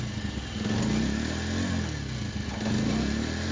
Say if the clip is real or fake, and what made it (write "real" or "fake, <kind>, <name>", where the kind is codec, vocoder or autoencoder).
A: real